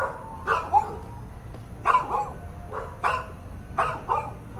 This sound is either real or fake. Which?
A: real